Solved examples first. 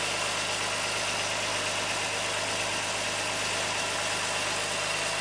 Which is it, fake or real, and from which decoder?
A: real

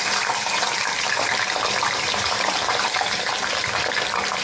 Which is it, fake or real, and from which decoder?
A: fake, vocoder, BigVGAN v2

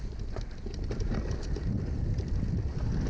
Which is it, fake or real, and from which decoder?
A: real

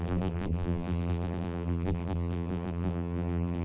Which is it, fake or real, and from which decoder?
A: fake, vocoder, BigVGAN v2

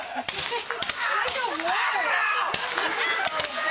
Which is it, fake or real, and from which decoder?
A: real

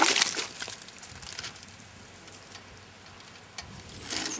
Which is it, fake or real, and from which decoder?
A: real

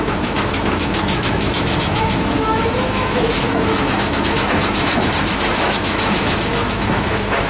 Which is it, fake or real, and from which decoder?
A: fake, autoencoder, DAC-VAE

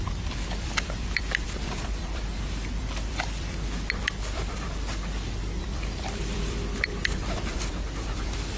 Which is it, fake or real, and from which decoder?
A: fake, vocoder, BigVGAN v2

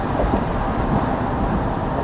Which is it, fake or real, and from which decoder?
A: fake, vocoder, BigVGAN v2